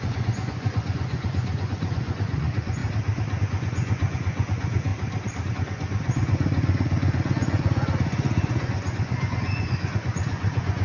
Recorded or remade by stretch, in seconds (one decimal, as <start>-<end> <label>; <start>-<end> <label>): 0.0-2.8 remade; 2.8-3.4 recorded; 3.4-4.9 remade; 4.9-5.5 recorded; 5.5-10.8 remade